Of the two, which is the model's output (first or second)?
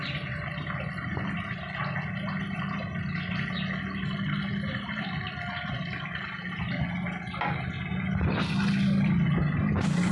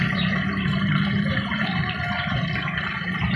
second